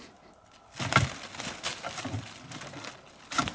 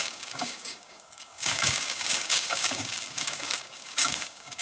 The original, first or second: first